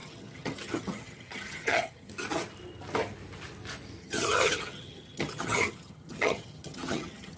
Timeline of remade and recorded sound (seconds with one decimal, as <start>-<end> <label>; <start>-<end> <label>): 0.0-2.1 remade; 2.1-4.0 recorded; 4.0-7.4 remade